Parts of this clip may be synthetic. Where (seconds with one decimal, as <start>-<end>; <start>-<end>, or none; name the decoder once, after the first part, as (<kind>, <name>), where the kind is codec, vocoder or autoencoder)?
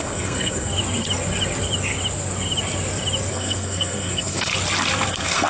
0.0-0.7 (codec, SNAC); 3.3-4.5; 5.1-5.5